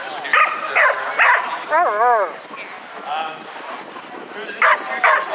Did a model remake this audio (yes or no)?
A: no